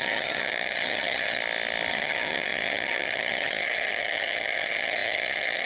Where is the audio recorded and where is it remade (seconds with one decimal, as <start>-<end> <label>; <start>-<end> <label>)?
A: 0.0-1.4 remade; 1.4-1.9 recorded; 1.9-5.7 remade